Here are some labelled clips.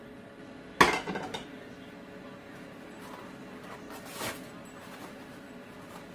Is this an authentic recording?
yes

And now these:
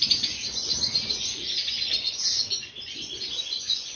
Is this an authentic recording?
no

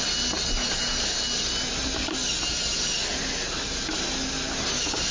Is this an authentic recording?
yes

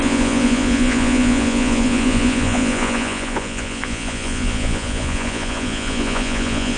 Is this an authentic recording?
no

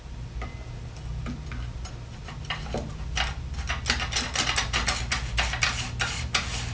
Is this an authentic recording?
yes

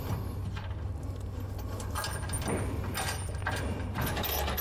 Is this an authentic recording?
yes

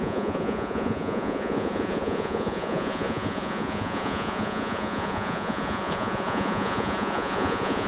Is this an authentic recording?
no